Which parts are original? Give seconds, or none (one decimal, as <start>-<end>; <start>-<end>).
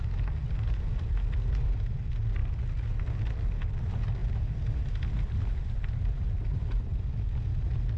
0.0-8.0